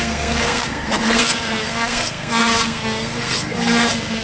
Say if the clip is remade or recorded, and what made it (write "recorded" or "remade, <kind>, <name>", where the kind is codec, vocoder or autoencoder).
remade, codec, SNAC